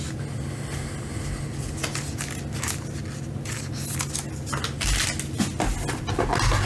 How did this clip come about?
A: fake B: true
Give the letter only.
B